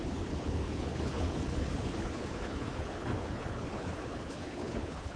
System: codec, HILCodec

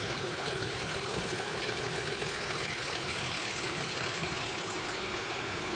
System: codec, HILCodec